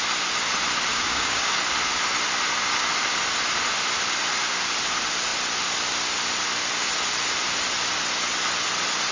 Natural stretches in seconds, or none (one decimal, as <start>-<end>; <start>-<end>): 0.0-0.9; 1.5-9.1